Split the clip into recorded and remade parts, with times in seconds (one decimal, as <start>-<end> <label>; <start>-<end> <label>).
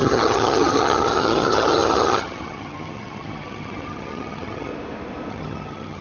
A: 0.0-4.7 remade; 4.7-5.3 recorded; 5.3-6.0 remade